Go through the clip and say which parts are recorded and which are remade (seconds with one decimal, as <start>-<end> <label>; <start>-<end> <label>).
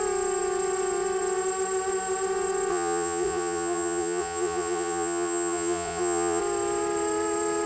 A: 0.0-2.7 recorded; 2.7-6.4 remade; 6.4-7.7 recorded